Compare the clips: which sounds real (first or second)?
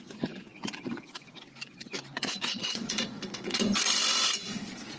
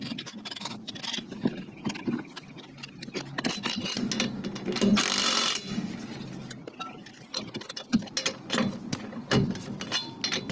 second